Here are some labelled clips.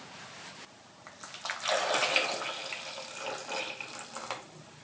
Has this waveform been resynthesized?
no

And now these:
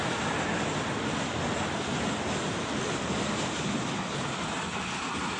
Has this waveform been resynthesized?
no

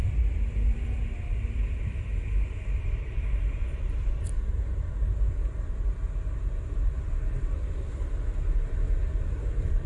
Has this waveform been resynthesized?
yes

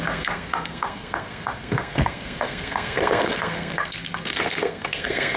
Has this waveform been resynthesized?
yes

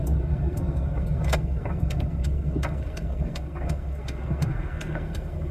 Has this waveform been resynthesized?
yes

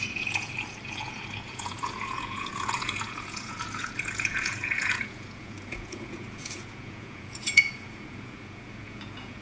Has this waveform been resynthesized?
yes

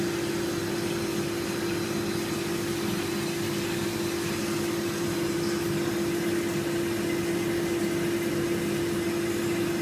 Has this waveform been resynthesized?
no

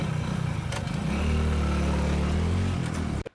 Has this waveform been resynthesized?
no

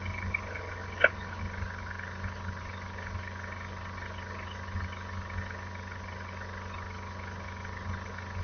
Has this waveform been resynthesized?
no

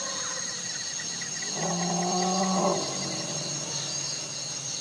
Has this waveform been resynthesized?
no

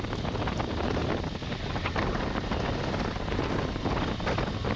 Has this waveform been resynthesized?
no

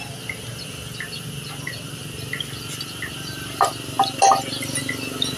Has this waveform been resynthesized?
no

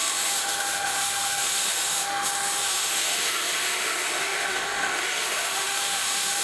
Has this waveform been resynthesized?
yes